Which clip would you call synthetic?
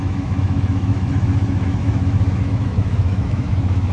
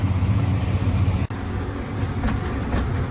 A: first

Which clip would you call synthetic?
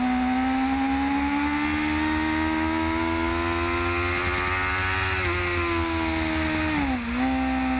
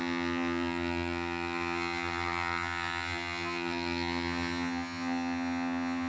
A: second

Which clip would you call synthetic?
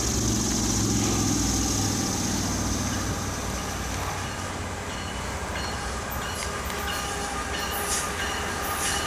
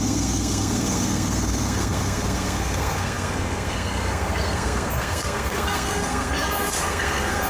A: second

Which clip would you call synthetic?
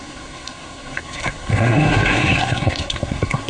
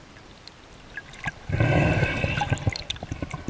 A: first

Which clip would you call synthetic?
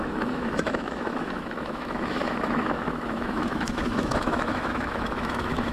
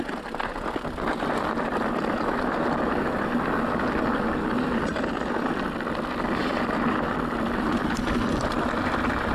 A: first